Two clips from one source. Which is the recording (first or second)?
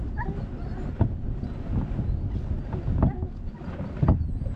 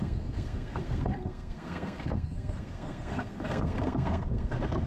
first